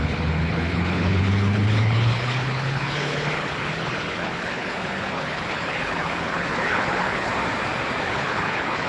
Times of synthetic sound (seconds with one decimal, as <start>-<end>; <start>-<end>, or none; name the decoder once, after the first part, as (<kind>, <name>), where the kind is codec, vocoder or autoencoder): 0.0-7.3 (codec, HILCodec); 8.0-8.9